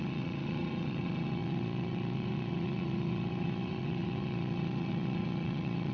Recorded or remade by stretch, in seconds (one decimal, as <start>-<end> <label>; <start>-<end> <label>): 0.0-5.9 remade